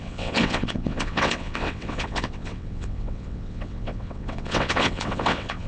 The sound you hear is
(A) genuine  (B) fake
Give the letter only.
B